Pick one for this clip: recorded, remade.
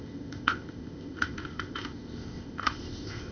remade